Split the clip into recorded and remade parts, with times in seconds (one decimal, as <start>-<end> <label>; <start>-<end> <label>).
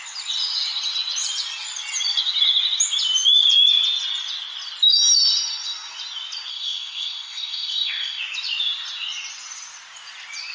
0.0-6.5 recorded; 6.5-8.2 remade; 8.2-10.5 recorded